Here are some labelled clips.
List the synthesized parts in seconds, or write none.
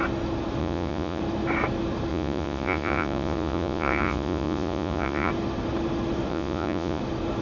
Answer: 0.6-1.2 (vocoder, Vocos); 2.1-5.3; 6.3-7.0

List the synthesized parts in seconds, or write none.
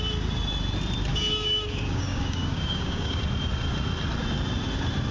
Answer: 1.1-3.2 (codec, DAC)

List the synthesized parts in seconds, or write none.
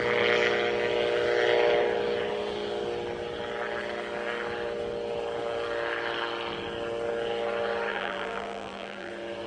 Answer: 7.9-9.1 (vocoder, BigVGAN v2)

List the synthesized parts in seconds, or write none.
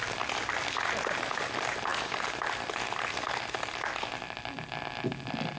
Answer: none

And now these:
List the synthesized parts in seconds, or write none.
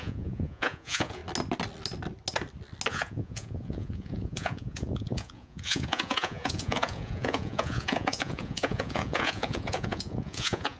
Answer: 0.0-1.2 (vocoder, Vocos); 2.9-10.8